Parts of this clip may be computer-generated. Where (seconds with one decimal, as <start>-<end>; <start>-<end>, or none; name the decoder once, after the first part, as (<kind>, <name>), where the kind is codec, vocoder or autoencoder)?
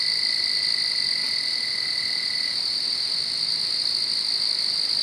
none